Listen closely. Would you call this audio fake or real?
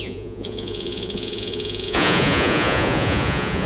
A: fake